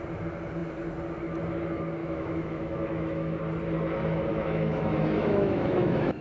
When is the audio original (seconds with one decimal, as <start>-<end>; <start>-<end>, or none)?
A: 0.0-2.0; 3.4-4.3